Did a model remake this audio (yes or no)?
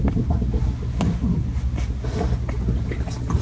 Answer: no